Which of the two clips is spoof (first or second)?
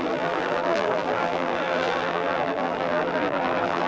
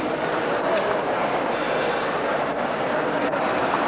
first